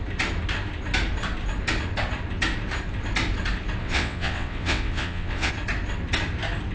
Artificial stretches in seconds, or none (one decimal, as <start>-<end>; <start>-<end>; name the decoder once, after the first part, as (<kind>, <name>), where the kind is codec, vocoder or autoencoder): 3.8-5.5 (vocoder, WaveNeXt)